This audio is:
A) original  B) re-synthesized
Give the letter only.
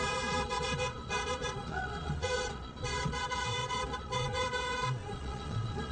B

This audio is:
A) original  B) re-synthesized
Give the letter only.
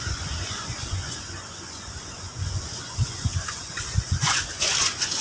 B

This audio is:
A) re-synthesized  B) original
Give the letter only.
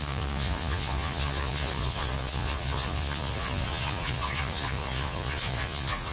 A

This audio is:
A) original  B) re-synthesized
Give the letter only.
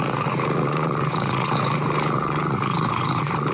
B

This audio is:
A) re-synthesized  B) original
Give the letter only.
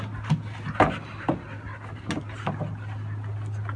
B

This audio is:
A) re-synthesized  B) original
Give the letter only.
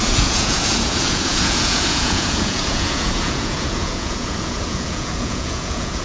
A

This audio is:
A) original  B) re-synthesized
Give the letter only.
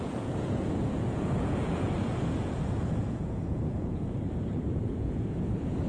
B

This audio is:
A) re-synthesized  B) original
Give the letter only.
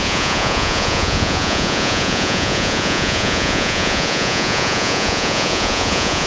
A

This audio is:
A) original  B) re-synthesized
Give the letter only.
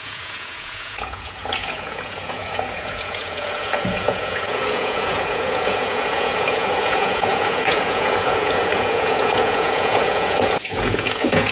B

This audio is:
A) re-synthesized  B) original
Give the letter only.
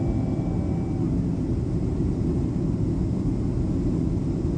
B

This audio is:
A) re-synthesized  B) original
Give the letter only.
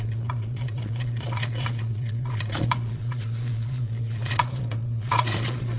A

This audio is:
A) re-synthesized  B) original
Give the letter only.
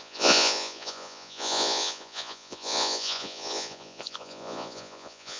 A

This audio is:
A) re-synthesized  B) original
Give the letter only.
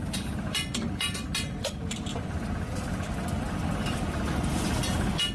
B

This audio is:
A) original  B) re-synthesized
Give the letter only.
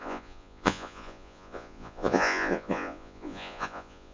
B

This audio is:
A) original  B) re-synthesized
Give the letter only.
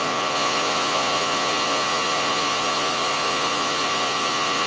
B